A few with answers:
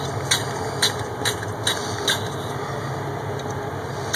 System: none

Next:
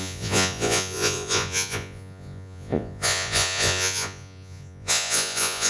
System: vocoder, Vocos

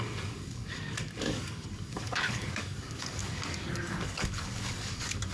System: codec, DAC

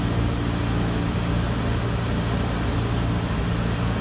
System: none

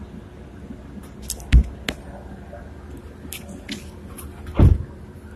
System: none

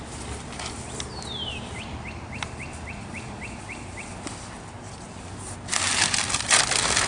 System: none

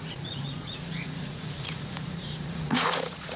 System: vocoder, Vocos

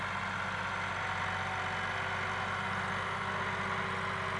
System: none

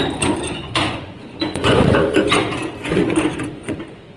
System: vocoder, Vocos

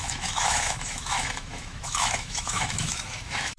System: autoencoder, DAC-VAE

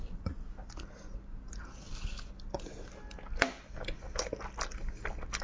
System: none